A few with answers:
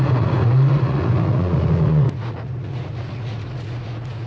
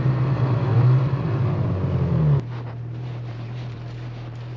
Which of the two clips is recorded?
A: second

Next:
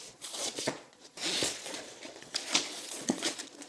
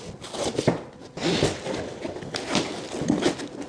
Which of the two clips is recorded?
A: second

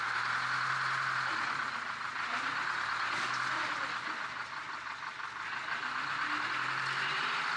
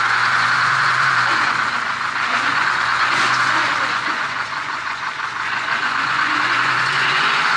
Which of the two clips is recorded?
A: first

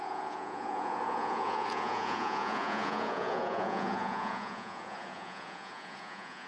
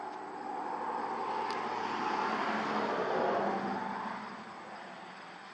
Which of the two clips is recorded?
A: second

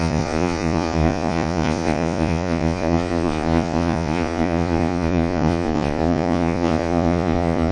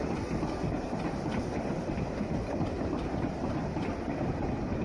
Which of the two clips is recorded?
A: second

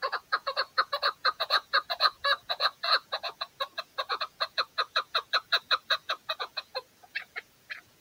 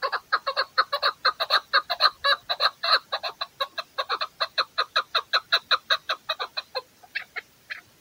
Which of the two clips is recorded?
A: second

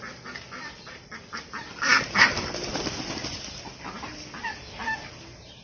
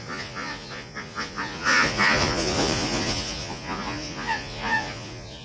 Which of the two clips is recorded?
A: first